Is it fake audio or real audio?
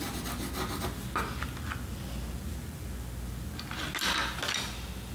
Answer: real